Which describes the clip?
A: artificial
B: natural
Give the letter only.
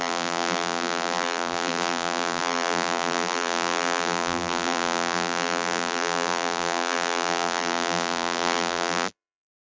A